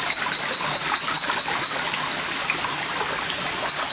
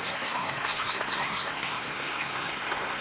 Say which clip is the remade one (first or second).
second